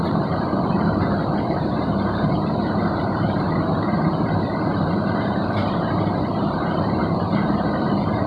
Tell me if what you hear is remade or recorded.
remade